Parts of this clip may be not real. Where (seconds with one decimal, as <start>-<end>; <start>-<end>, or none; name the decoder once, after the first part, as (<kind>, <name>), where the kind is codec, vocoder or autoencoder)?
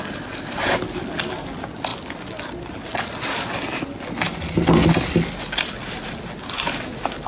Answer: none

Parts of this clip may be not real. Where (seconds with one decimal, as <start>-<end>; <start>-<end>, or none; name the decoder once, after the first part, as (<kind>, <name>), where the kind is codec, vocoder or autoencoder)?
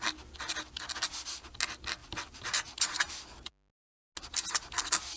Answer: 2.0-3.5 (vocoder, BigVGAN v2)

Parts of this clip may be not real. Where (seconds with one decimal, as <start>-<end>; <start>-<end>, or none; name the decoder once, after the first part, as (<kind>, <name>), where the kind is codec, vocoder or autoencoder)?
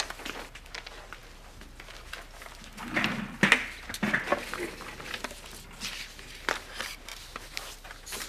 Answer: none